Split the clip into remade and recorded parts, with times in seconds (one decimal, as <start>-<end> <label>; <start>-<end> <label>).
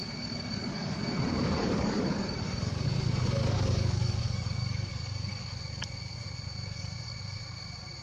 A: 0.0-1.0 remade; 1.0-1.6 recorded; 1.6-5.4 remade; 5.4-8.0 recorded